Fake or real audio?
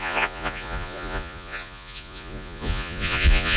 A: fake